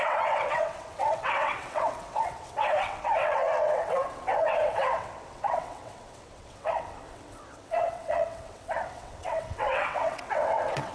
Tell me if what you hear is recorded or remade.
remade